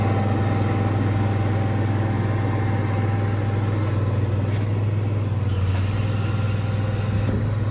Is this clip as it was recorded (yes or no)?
yes